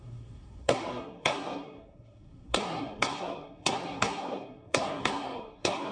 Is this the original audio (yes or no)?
no